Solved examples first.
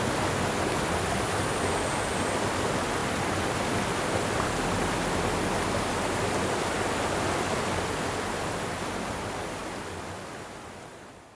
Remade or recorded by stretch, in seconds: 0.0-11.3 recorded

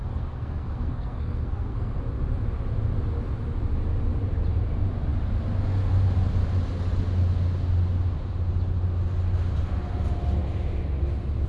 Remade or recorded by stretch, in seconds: 0.0-2.0 remade; 2.0-11.5 recorded

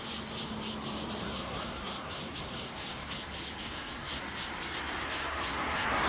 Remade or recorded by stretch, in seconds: 0.0-1.2 recorded; 1.2-3.2 remade; 3.2-3.6 recorded; 3.6-4.2 remade; 4.2-5.0 recorded; 5.0-6.1 remade

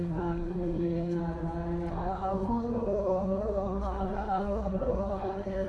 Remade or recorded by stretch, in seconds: 0.0-1.2 remade; 1.2-1.9 recorded; 1.9-5.7 remade

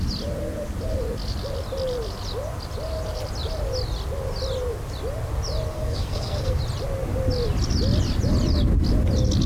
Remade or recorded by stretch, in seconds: 0.0-5.7 recorded; 5.7-6.6 remade; 6.6-9.5 recorded